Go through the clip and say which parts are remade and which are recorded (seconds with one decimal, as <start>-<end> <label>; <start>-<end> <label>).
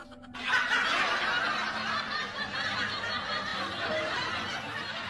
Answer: 0.0-3.5 recorded; 3.5-5.1 remade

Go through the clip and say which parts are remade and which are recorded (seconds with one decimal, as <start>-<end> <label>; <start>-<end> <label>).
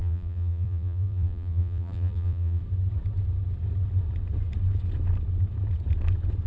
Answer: 0.0-2.6 remade; 2.6-6.5 recorded